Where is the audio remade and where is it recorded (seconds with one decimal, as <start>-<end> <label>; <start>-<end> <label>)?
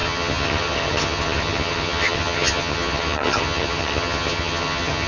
0.0-5.1 remade